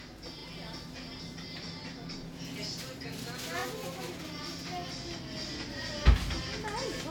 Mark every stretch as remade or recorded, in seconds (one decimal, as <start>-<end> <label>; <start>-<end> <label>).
0.0-7.1 recorded